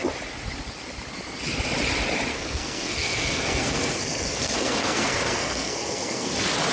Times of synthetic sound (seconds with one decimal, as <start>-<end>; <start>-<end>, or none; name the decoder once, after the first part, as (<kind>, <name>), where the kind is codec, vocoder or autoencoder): 2.3-6.3 (codec, SNAC)

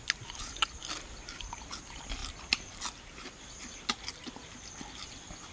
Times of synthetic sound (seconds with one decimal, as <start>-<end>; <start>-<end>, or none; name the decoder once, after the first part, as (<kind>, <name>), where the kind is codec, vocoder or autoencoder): none